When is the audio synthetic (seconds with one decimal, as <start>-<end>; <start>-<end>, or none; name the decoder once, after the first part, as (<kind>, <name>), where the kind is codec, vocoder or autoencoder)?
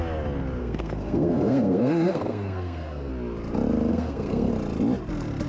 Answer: 0.6-3.1 (codec, SNAC); 3.9-4.5